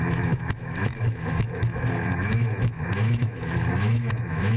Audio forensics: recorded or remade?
remade